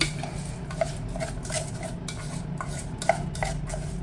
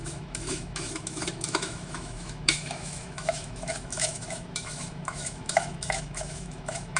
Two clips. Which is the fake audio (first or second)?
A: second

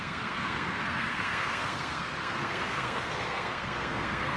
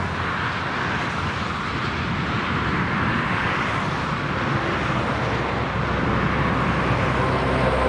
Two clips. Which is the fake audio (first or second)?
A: first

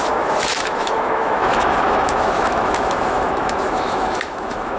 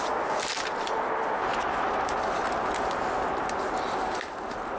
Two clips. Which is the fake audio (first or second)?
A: first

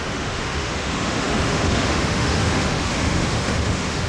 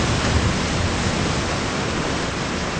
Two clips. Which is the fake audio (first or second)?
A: first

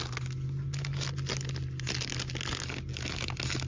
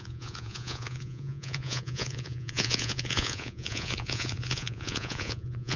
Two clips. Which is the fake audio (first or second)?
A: second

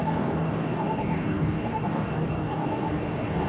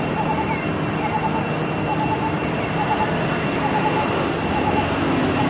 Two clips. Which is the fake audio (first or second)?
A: first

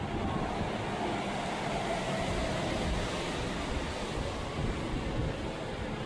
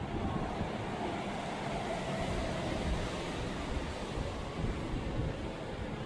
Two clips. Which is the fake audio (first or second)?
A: second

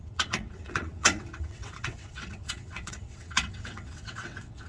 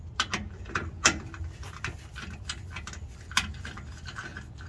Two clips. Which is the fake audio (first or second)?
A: first